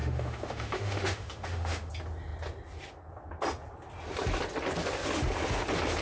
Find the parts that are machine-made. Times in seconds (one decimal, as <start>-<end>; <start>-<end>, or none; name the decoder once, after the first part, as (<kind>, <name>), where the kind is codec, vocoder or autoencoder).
0.0-1.9 (autoencoder, DAC-VAE)

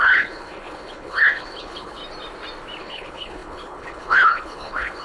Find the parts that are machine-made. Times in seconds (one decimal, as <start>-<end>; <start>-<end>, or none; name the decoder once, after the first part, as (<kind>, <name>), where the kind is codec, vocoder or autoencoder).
0.0-2.0 (codec, HILCodec); 2.8-5.0

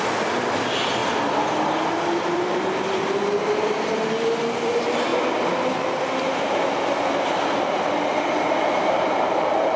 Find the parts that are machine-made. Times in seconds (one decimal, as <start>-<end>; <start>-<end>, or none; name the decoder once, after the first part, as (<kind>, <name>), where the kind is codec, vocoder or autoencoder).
none

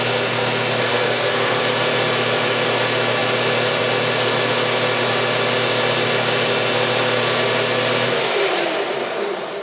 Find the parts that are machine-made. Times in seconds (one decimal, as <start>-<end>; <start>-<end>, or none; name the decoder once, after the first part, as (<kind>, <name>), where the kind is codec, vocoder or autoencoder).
0.9-1.6 (codec, SNAC)

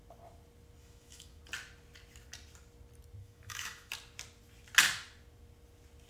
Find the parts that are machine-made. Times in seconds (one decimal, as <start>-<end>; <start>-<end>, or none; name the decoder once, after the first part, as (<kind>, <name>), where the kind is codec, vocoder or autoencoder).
0.8-1.4 (autoencoder, DAC-VAE); 3.2-3.9

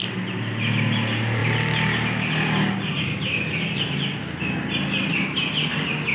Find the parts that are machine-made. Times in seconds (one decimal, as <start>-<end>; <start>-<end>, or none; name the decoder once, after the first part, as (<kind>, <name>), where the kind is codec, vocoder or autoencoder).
none

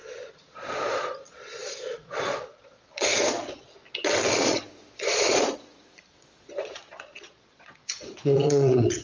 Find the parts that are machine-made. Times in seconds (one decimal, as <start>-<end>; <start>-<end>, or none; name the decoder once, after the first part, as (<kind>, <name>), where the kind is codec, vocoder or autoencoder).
0.0-3.8 (vocoder, Vocos); 4.3-9.0